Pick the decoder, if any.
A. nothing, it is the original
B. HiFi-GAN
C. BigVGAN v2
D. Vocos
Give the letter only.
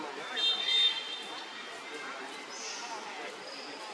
A